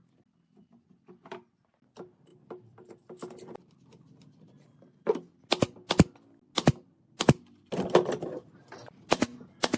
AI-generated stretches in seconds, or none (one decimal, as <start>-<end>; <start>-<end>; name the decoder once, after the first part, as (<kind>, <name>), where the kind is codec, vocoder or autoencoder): none